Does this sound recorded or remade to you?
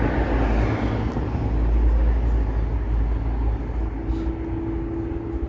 recorded